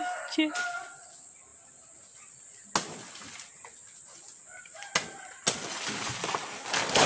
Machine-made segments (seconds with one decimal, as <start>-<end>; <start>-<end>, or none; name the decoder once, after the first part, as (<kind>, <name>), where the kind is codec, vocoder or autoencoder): none